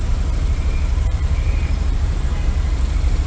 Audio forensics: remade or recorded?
remade